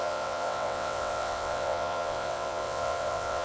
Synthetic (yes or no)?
yes